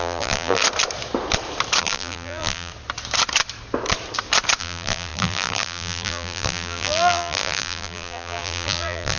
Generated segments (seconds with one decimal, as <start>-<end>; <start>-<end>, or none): 0.0-0.6; 1.8-2.7; 4.6-9.2